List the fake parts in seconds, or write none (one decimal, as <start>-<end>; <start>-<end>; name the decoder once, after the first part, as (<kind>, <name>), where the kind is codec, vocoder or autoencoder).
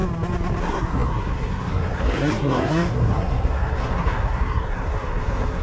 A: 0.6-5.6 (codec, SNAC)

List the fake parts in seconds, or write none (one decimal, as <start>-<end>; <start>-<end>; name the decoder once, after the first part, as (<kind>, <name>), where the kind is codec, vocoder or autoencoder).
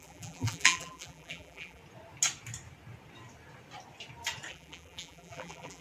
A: 0.0-1.8 (vocoder, BigVGAN v2); 4.5-5.8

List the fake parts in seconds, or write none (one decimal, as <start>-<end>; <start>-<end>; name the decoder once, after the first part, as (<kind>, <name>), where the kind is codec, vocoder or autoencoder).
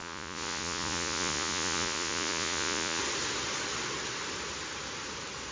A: 0.0-3.0 (vocoder, Vocos)